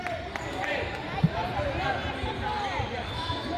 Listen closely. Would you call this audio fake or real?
real